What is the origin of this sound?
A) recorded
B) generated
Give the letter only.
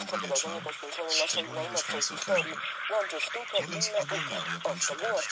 A